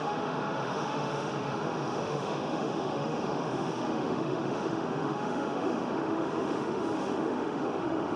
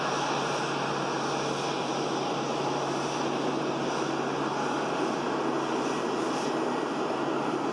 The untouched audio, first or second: second